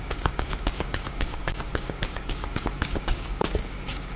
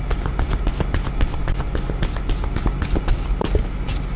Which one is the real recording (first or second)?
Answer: second